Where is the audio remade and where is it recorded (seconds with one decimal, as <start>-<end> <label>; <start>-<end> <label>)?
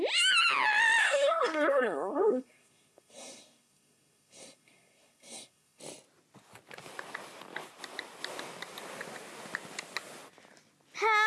0.0-1.0 recorded; 1.0-5.8 remade; 5.8-11.3 recorded